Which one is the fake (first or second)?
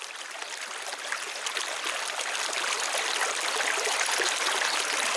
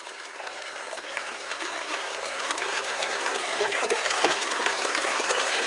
second